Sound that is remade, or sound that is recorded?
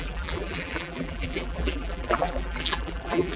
remade